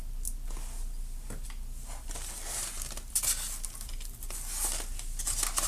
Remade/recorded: recorded